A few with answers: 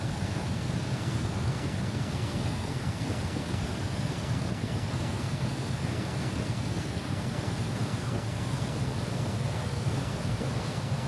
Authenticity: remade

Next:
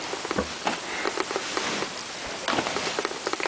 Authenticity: recorded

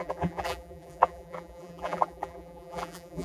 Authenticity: remade